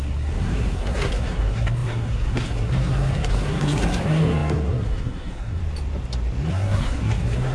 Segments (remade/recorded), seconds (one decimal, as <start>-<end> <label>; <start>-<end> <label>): 0.0-5.6 remade; 5.6-6.5 recorded; 6.5-7.5 remade